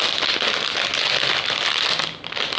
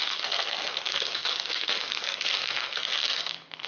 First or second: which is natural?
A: first